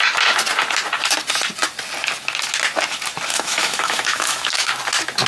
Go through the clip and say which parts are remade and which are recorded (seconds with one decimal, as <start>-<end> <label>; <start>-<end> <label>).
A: 0.0-3.3 recorded; 3.3-4.7 remade; 4.7-5.3 recorded